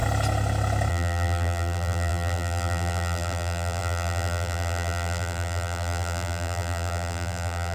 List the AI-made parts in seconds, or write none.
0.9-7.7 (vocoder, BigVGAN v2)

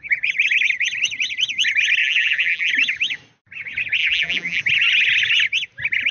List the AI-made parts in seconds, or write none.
2.0-2.7 (vocoder, BigVGAN v2); 4.0-4.6

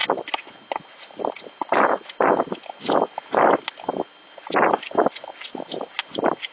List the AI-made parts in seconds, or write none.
none

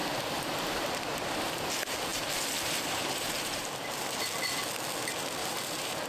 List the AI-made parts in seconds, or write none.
0.0-1.6 (vocoder, BigVGAN v2); 2.1-4.0; 5.4-6.1

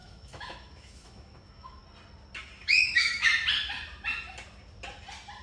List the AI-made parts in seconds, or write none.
0.0-1.8 (autoencoder, DAC-VAE); 2.6-3.3

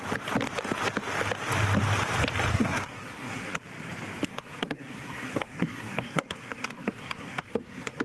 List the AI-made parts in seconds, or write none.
2.5-3.6 (codec, SNAC); 4.3-8.0

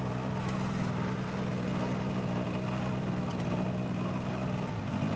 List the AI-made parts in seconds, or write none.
none

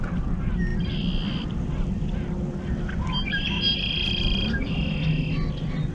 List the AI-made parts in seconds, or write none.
none